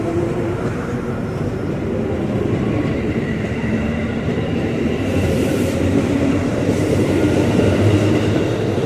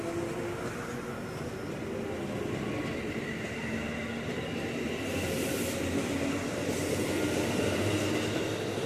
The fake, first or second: first